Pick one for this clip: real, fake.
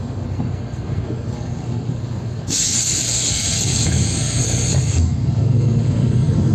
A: fake